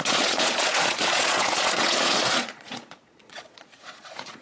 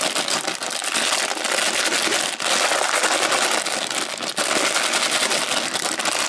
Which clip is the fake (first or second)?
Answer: first